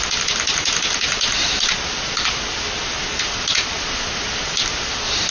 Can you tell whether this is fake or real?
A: real